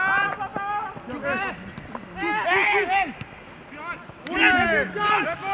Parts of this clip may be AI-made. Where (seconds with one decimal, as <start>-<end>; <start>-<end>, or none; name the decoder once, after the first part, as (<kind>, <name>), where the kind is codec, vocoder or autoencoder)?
none